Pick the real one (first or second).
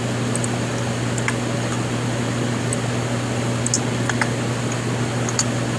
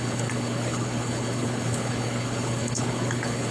first